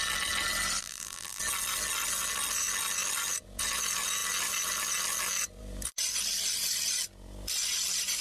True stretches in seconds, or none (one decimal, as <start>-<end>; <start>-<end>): 0.0-0.8; 1.4-8.2